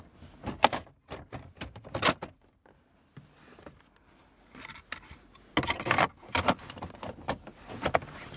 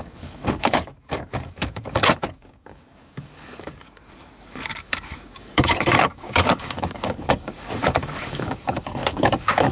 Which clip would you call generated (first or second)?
second